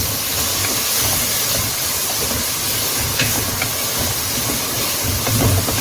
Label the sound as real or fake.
real